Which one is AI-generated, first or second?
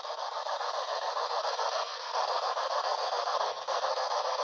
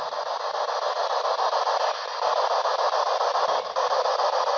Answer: first